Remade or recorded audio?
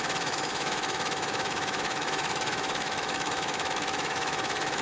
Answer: remade